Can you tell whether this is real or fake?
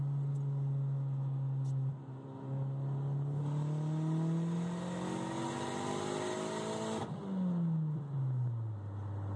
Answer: real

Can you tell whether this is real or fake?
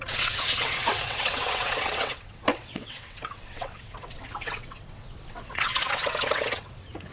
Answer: fake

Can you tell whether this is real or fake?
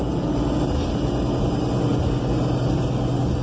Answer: real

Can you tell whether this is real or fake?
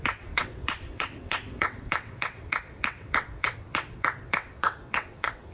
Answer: fake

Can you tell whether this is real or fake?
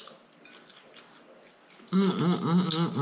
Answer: real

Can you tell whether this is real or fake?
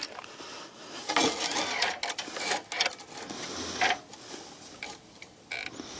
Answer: real